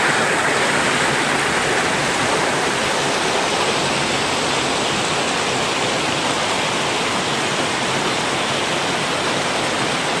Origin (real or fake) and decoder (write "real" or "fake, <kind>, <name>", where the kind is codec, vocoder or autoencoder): real